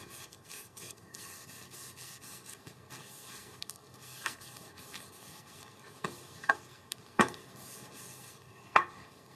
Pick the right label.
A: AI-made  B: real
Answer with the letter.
A